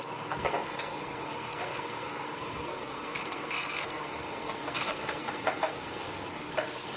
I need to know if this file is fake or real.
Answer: fake